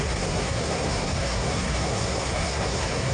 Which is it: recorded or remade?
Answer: remade